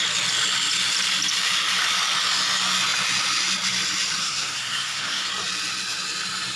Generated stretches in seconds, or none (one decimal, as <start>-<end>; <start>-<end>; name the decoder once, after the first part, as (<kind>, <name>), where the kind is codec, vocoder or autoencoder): 4.2-5.3 (codec, SNAC)